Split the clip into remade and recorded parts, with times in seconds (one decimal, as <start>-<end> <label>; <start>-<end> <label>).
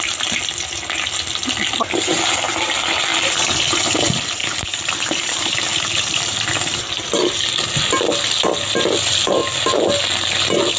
0.0-4.4 recorded; 4.4-7.4 remade; 7.4-10.8 recorded